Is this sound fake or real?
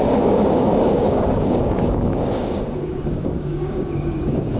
fake